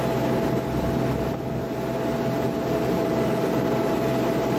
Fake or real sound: real